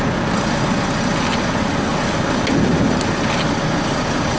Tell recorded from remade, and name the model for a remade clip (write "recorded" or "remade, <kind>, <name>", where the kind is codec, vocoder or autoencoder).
recorded